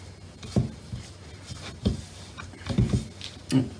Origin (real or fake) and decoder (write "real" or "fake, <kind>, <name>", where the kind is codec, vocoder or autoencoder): real